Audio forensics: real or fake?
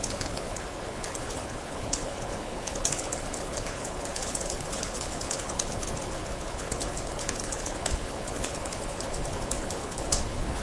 fake